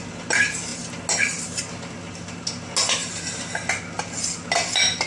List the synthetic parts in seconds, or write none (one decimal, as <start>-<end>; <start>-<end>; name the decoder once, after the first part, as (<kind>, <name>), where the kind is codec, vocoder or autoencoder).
3.0-3.5 (vocoder, BigVGAN v2)